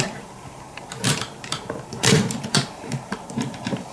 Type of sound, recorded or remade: remade